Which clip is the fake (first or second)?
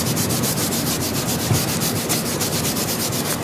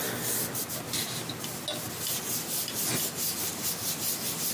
first